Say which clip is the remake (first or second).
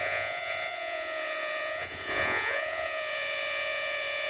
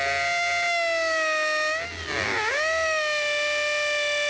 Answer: first